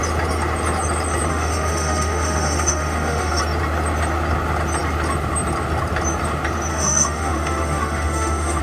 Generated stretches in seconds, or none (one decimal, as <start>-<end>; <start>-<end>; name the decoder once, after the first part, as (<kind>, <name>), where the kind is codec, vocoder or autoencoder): 1.3-3.4 (autoencoder, DAC-VAE); 6.7-8.6